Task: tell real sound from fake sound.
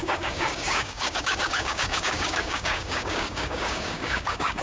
fake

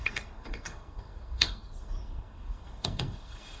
fake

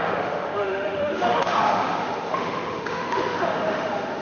fake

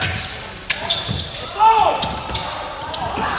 real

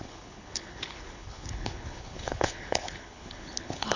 fake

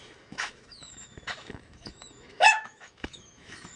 fake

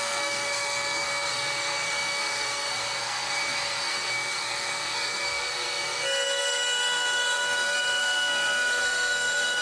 fake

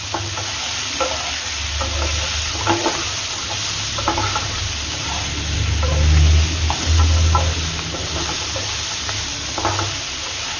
real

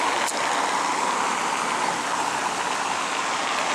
real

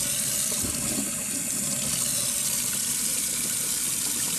real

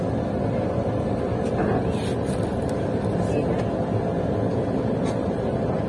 real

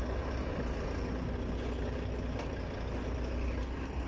real